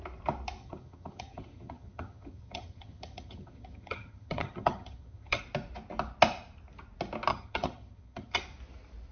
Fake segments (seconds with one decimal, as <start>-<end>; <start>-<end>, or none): 0.6-5.4; 7.3-8.4